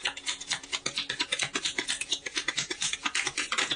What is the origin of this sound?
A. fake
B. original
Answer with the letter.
A